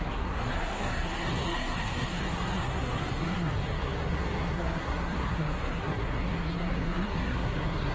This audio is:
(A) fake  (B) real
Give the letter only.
A